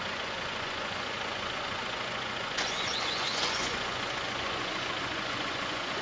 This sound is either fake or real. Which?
fake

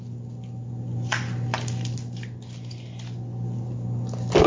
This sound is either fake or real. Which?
real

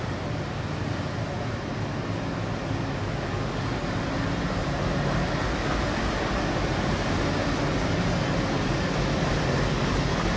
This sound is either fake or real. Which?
real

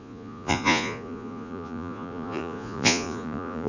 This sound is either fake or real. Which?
fake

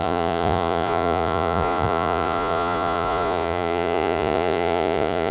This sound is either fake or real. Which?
fake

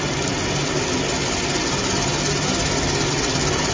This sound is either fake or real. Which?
real